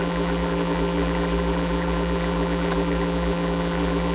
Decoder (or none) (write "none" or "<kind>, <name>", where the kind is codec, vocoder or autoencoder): vocoder, BigVGAN v2